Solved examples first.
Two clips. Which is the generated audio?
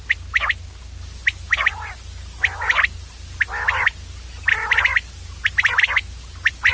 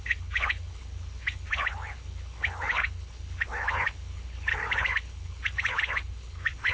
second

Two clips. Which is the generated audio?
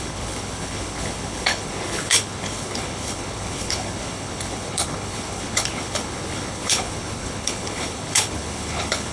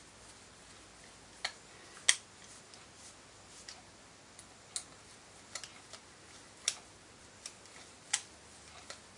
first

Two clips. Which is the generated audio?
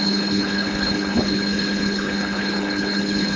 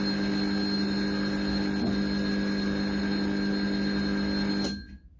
first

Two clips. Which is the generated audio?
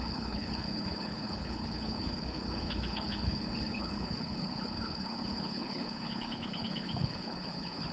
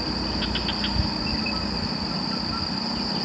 first